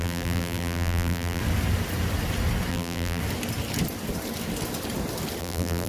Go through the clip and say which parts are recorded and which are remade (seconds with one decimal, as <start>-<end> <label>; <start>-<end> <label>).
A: 0.0-1.4 remade; 1.4-2.7 recorded; 2.7-3.2 remade; 3.2-5.4 recorded; 5.4-5.9 remade